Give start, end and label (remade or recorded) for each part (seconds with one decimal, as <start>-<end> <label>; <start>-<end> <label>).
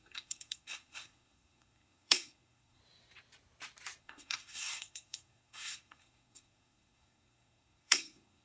0.0-2.8 remade; 2.8-4.0 recorded; 4.0-8.4 remade